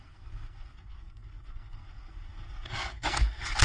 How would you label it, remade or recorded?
remade